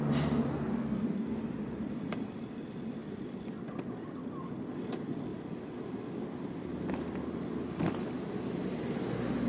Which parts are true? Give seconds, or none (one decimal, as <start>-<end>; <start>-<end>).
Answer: 0.0-0.8; 1.3-9.5